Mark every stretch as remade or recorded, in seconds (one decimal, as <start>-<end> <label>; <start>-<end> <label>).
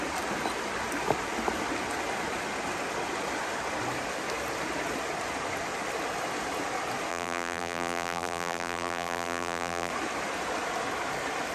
0.0-7.1 recorded; 7.1-9.9 remade; 9.9-11.5 recorded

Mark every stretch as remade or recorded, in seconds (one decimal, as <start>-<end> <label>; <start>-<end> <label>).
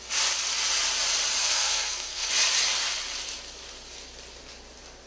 0.0-1.4 recorded; 1.4-2.3 remade; 2.3-5.1 recorded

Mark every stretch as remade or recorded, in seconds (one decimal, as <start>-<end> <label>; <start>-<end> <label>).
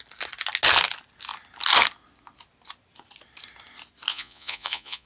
0.0-4.1 recorded; 4.1-5.1 remade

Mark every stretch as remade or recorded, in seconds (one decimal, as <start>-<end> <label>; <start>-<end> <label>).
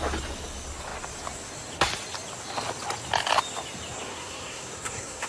0.0-4.1 recorded; 4.1-5.3 remade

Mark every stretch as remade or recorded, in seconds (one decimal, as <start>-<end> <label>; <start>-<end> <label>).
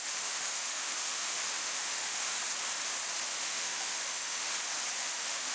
0.0-2.4 remade; 2.4-3.4 recorded; 3.4-4.5 remade; 4.5-5.0 recorded; 5.0-5.5 remade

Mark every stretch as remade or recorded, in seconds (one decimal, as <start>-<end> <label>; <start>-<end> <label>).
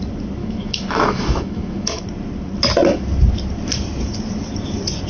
0.0-0.4 recorded; 0.4-2.0 remade; 2.0-5.1 recorded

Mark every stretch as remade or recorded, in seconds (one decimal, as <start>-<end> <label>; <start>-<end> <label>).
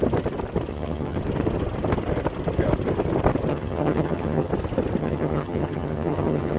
0.0-0.7 recorded; 0.7-1.2 remade; 1.2-3.5 recorded; 3.5-4.5 remade; 4.5-5.0 recorded; 5.0-6.6 remade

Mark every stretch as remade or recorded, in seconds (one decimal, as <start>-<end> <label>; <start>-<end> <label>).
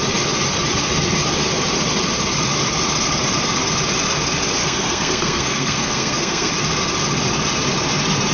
0.0-4.6 recorded; 4.6-6.5 remade; 6.5-8.3 recorded